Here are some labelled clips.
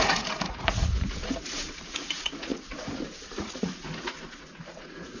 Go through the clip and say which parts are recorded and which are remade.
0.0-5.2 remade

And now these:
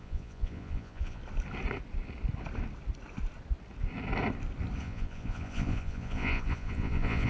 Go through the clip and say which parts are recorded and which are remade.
0.0-1.2 remade; 1.2-4.8 recorded; 4.8-7.3 remade

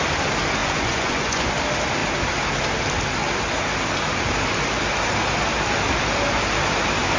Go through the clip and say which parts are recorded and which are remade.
0.0-0.6 recorded; 0.6-1.5 remade; 1.5-7.2 recorded

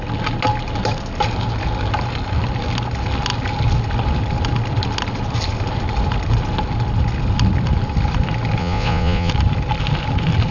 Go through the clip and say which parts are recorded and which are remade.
0.0-8.6 recorded; 8.6-9.3 remade; 9.3-10.5 recorded

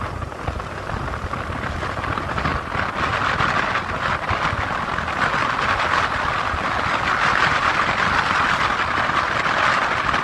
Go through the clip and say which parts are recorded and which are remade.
0.0-10.2 recorded

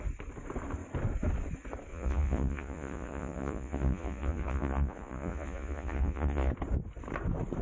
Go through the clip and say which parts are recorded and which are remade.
0.0-1.9 recorded; 1.9-6.5 remade; 6.5-7.6 recorded